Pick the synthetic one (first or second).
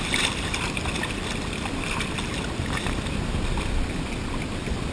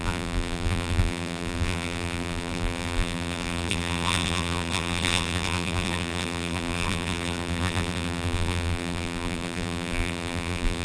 second